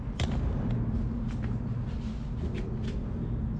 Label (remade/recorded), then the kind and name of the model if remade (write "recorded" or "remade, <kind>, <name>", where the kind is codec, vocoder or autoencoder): recorded